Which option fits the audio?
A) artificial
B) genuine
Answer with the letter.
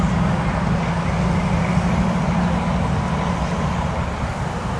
B